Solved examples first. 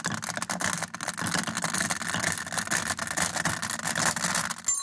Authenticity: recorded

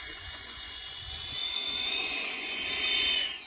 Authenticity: remade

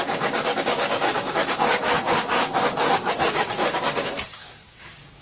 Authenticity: remade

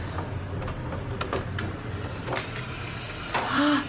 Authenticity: recorded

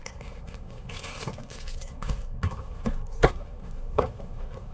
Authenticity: remade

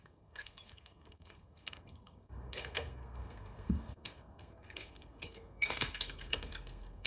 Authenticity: remade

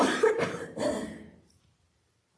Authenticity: remade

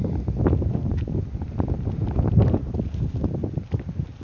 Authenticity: recorded